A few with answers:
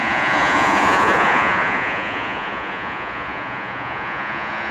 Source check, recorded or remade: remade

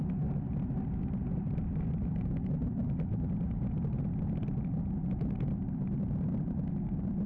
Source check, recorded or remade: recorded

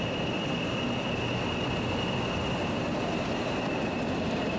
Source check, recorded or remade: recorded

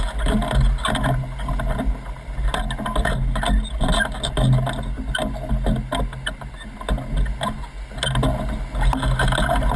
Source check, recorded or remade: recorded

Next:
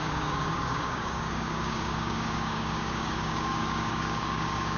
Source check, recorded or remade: remade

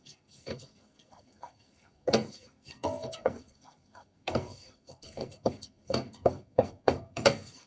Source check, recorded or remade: remade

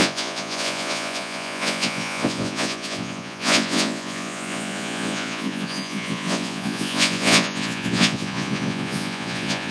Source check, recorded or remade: remade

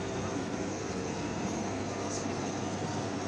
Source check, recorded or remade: remade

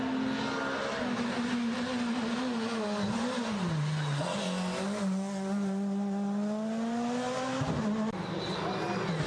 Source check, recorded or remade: recorded